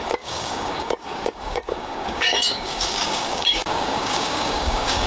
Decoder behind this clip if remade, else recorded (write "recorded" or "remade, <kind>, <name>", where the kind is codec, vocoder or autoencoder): remade, codec, DAC